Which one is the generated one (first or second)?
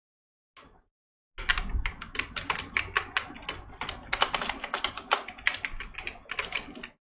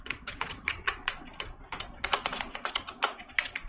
second